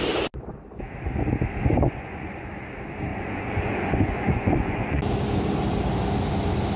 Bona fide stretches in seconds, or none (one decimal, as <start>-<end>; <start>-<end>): 0.0-1.7; 2.5-3.1; 5.0-6.8